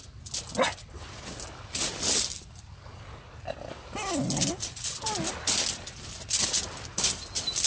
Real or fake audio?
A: real